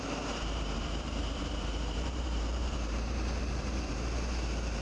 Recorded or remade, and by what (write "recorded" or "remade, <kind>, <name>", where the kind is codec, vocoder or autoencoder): remade, vocoder, BigVGAN v2